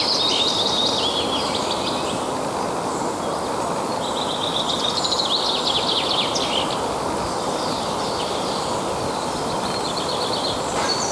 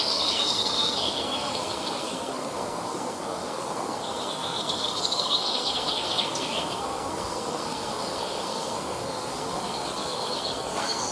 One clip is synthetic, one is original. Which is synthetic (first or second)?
second